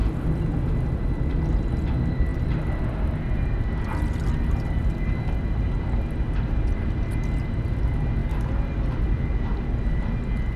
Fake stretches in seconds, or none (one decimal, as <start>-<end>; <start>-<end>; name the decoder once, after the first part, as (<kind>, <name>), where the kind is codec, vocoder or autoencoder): none